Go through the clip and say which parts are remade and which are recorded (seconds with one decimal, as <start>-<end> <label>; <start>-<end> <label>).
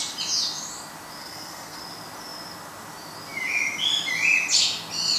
0.0-1.2 recorded; 1.2-1.8 remade; 1.8-5.2 recorded